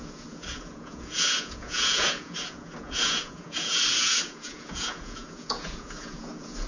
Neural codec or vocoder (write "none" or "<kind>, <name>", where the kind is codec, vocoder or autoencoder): vocoder, Vocos